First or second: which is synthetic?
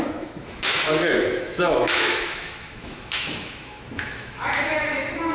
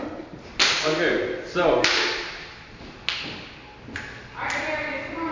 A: first